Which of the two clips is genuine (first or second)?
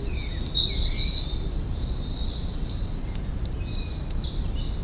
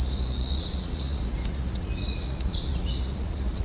first